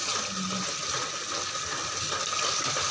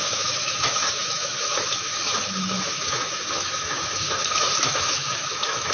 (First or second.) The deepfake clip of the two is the second